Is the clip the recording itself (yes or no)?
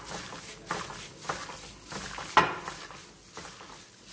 yes